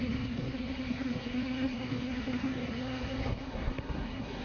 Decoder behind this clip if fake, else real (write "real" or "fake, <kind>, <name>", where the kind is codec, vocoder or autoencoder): fake, codec, SNAC